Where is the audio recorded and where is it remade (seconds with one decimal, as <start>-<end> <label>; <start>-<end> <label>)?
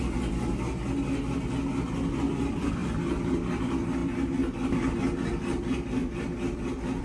0.0-7.0 recorded